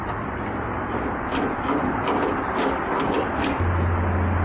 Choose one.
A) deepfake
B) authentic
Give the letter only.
B